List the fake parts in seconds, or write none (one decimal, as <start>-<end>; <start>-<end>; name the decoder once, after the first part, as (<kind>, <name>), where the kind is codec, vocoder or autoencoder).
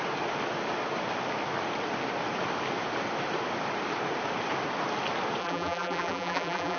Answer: 5.4-6.8 (vocoder, BigVGAN v2)